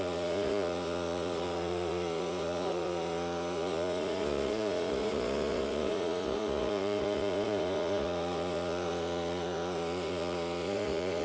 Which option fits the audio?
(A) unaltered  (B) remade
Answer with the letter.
B